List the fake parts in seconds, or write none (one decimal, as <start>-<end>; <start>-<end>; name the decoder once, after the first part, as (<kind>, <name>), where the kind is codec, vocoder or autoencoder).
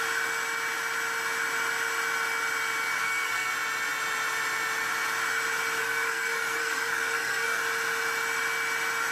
3.0-3.5 (codec, SNAC); 5.8-7.6